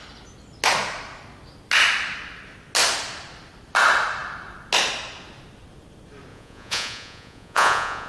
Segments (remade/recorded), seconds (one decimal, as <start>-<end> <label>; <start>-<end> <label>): 0.0-6.3 recorded; 6.3-8.1 remade